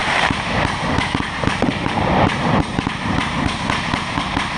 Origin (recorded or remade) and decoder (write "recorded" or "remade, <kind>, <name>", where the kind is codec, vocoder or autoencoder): remade, vocoder, BigVGAN v2